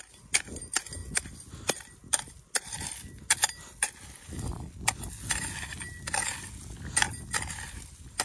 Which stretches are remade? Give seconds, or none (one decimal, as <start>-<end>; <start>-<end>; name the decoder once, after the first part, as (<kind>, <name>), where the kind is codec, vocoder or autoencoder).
1.0-5.4 (vocoder, BigVGAN v2)